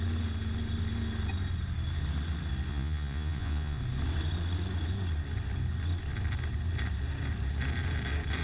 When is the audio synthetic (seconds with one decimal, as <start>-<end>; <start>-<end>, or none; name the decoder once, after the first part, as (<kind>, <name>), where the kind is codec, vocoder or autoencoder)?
2.7-3.8 (vocoder, Vocos)

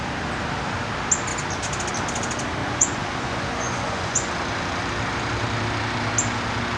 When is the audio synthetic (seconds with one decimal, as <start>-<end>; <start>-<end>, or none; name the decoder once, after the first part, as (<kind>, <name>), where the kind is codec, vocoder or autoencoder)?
2.6-4.3 (vocoder, Vocos)

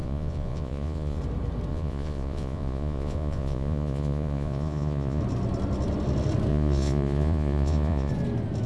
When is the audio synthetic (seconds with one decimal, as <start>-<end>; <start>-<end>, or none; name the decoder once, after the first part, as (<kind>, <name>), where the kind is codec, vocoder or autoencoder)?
0.0-1.2 (vocoder, Vocos); 1.7-5.2; 6.5-8.1

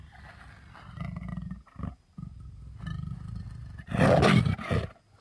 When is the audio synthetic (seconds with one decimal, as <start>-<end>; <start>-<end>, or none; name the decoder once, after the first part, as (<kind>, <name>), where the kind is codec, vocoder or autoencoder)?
none

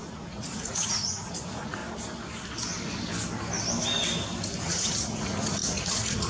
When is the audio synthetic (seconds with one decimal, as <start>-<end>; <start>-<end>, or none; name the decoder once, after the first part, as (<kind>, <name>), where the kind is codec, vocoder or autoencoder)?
0.0-1.8 (vocoder, Vocos); 4.6-6.3

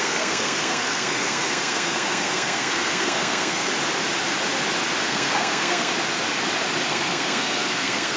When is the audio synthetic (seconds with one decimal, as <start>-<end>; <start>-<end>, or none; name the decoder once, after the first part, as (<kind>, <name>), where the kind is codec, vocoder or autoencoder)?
0.0-3.7 (codec, SNAC); 5.0-5.9; 6.9-8.2